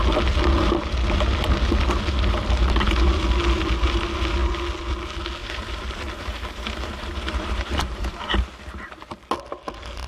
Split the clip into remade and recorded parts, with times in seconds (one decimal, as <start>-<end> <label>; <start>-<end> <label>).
0.0-5.4 recorded; 5.4-9.2 remade; 9.2-10.1 recorded